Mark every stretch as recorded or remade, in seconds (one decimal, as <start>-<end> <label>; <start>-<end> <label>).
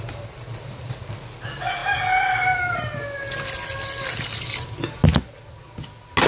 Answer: 0.0-6.3 recorded